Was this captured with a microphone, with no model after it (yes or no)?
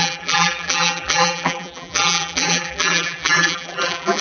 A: no